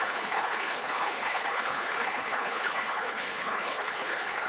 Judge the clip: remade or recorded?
remade